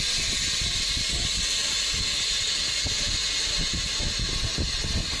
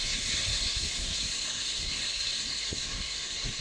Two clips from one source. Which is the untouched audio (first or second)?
first